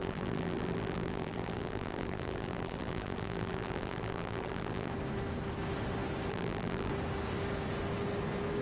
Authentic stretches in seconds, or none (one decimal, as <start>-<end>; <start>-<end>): 4.9-6.3; 6.9-8.6